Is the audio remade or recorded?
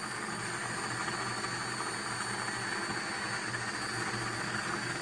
recorded